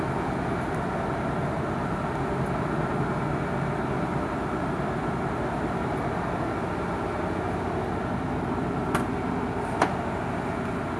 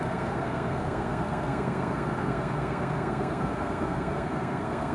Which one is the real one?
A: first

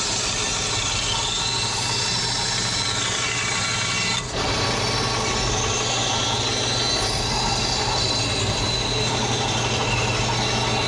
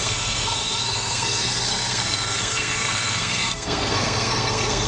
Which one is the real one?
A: first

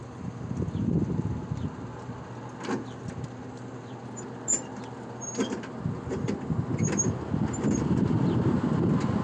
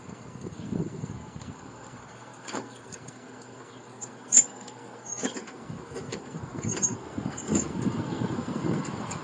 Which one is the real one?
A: first